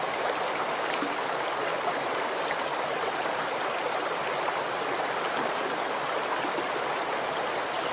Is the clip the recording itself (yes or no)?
yes